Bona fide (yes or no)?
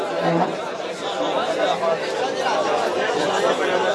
yes